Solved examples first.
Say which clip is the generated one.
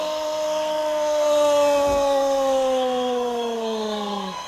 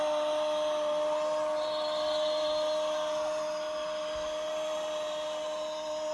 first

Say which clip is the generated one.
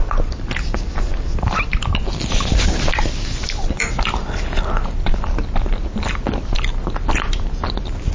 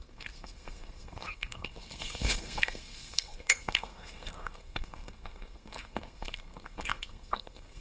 second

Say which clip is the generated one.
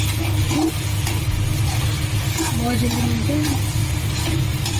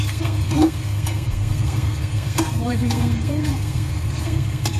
second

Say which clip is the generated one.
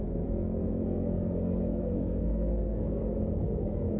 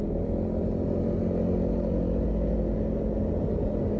first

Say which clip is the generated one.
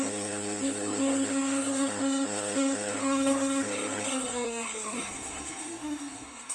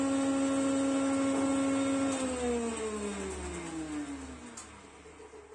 first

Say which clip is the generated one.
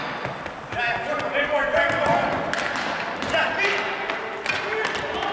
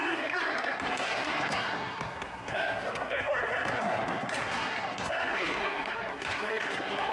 second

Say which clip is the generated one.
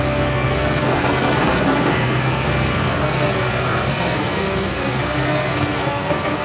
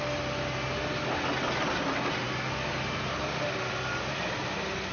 first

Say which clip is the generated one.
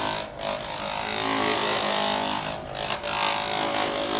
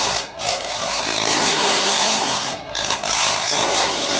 second